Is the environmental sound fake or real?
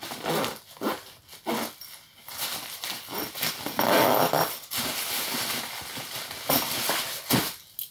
real